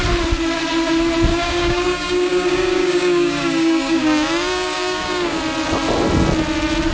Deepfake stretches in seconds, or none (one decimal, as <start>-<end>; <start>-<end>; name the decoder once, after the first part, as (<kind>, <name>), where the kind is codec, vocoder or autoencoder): 1.3-5.4 (codec, DAC)